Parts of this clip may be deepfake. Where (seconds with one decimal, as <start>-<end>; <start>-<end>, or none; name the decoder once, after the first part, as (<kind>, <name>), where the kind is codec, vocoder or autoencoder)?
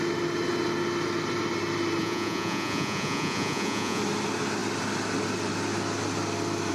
2.0-4.0 (vocoder, Vocos)